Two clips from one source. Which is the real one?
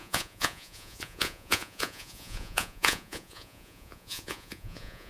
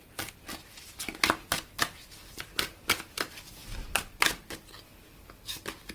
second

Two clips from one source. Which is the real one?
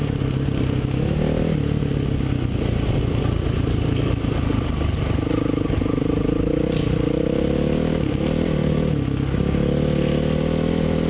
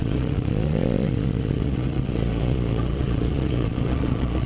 first